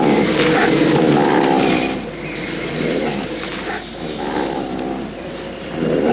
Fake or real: real